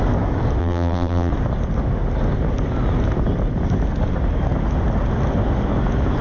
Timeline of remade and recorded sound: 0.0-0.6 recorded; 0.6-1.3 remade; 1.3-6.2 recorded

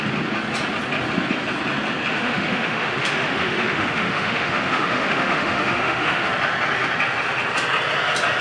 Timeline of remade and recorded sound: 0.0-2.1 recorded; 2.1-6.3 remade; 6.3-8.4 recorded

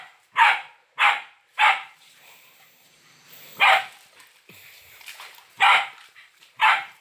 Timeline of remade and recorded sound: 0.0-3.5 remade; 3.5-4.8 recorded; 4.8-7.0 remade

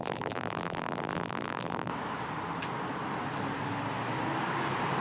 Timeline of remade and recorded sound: 0.0-1.9 remade; 1.9-5.0 recorded

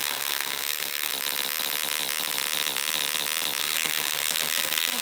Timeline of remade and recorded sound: 0.0-1.1 remade; 1.1-3.6 recorded; 3.6-5.0 remade

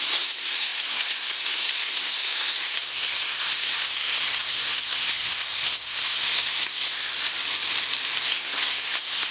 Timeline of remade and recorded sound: 0.0-7.1 remade; 7.1-8.3 recorded; 8.3-9.3 remade

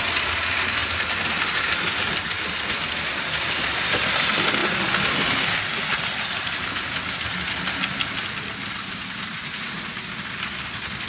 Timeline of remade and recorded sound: 0.0-11.1 recorded

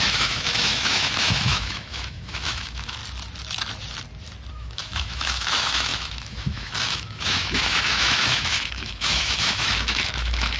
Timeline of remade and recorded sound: 0.0-3.0 remade; 3.0-4.5 recorded; 4.5-10.6 remade